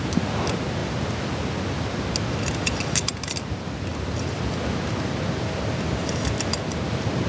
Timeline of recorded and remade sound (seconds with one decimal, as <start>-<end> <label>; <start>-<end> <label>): 0.0-7.3 recorded